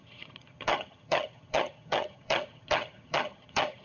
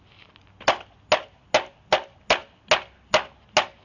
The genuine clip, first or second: second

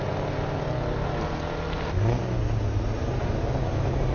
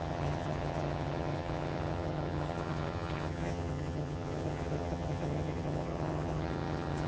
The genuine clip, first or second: first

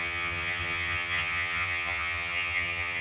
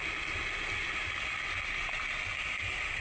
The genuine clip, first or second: second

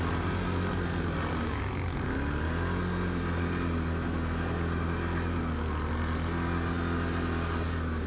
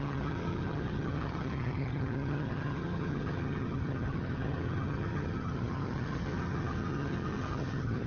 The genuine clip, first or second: first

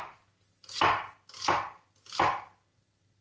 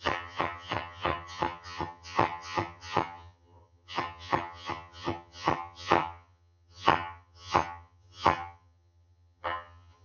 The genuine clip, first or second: first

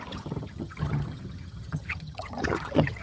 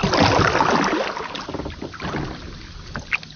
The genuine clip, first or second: second